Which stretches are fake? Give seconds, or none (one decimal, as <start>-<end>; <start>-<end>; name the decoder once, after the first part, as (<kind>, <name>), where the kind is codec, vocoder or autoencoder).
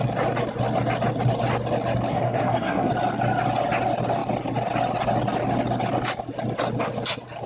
2.1-2.9 (codec, SNAC)